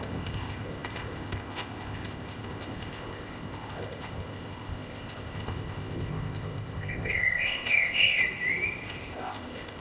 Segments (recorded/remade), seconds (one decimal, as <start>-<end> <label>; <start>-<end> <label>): 0.0-8.2 remade; 8.2-8.9 recorded; 8.9-9.8 remade